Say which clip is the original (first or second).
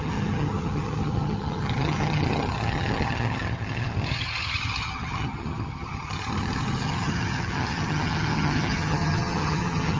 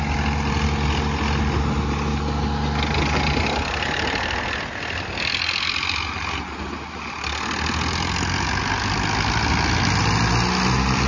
second